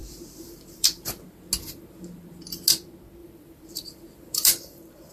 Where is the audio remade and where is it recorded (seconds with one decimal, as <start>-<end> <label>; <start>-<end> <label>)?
0.0-1.2 remade; 1.2-3.2 recorded; 3.2-5.1 remade